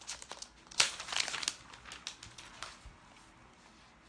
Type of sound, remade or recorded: recorded